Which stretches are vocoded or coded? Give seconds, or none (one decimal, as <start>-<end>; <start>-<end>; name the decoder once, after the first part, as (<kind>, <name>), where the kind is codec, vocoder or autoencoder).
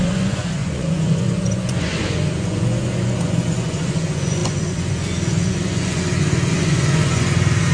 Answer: 0.0-7.7 (vocoder, Vocos)